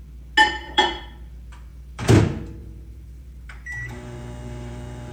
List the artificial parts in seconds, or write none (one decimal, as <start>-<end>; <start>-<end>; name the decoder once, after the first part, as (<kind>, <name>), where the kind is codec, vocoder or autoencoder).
0.4-1.0 (vocoder, BigVGAN v2); 1.7-2.2; 2.6-5.1